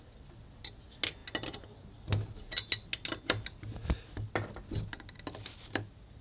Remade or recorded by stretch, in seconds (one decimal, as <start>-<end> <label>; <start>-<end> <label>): 0.0-6.2 recorded